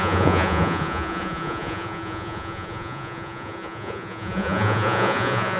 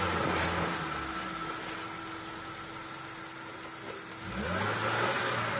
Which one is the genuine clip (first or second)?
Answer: second